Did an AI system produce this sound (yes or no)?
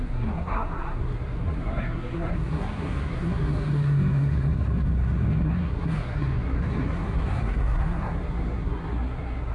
yes